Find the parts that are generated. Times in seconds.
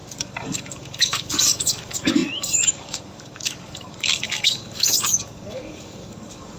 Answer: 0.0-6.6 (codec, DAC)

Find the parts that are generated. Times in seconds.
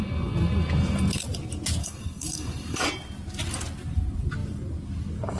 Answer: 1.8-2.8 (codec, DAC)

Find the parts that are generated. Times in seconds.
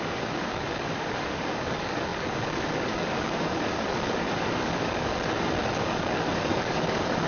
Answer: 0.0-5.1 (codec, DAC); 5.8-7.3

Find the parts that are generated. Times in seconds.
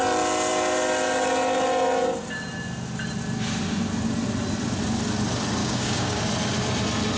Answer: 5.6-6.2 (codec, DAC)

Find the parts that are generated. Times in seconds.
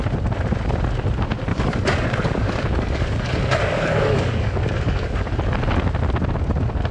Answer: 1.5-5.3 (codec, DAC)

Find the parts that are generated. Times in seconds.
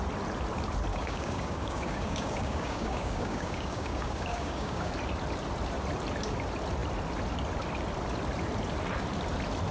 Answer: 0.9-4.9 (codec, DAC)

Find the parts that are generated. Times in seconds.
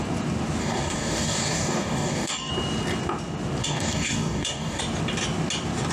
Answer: 0.6-2.5 (codec, DAC); 3.6-4.8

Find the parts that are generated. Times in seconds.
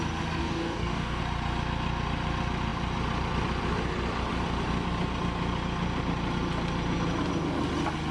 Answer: 0.4-1.2 (codec, DAC)